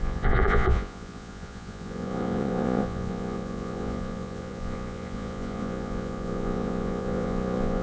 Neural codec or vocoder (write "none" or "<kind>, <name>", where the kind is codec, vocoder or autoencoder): vocoder, Vocos